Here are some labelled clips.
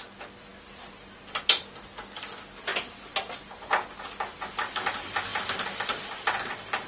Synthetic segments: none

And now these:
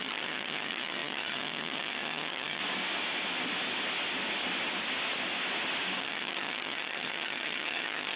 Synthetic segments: 0.0-2.6 (vocoder, HiFi-GAN); 6.0-8.2

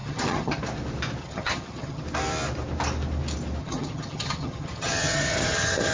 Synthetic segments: 0.0-0.6 (vocoder, HiFi-GAN); 1.2-2.0; 3.6-5.9

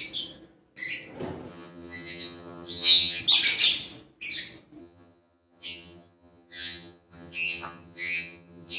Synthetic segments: 1.5-3.2 (vocoder, HiFi-GAN); 4.8-8.8

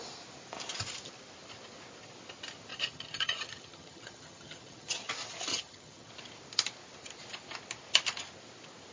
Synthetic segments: 2.7-5.1 (vocoder, HiFi-GAN); 5.5-6.1

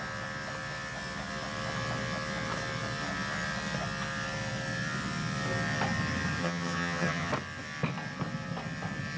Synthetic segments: 6.4-7.3 (vocoder, HiFi-GAN)

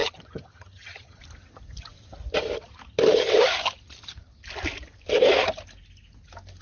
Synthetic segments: 0.0-1.2 (vocoder, HiFi-GAN)